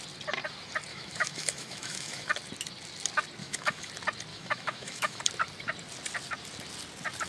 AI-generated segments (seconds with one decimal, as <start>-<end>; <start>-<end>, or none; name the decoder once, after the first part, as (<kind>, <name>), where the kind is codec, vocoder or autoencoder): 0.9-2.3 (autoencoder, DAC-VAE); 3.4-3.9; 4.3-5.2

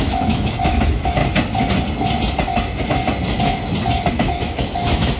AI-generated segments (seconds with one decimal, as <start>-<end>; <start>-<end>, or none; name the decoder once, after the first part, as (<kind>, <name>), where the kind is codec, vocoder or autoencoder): 0.0-1.2 (autoencoder, DAC-VAE); 4.1-5.2

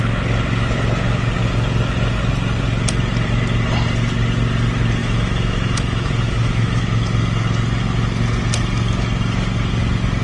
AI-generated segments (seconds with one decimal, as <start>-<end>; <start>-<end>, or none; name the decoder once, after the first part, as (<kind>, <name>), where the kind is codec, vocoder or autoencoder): 5.0-6.8 (autoencoder, DAC-VAE)

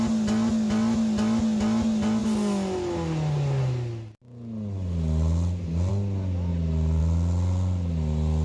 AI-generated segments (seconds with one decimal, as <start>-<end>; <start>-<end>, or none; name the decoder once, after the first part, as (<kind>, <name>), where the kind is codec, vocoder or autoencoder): none

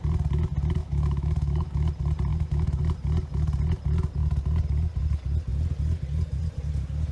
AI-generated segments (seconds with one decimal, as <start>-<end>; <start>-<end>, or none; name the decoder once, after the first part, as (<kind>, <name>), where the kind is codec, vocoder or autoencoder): 0.8-1.9 (autoencoder, DAC-VAE); 2.3-2.8

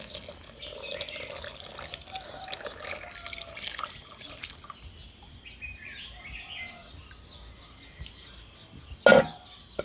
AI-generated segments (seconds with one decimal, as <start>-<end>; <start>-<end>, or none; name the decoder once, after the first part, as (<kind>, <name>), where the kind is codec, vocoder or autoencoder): none

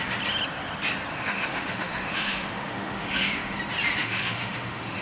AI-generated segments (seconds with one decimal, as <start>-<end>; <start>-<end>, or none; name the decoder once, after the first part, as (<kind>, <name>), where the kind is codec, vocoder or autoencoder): 1.1-3.6 (autoencoder, DAC-VAE); 4.0-5.0

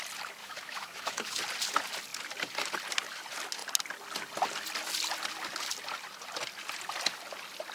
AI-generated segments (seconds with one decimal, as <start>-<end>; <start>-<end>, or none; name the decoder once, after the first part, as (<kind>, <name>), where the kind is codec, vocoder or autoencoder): 0.4-1.4 (autoencoder, DAC-VAE)